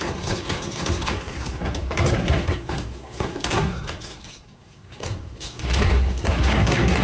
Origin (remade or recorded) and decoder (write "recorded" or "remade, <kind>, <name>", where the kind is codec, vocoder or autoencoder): remade, codec, SNAC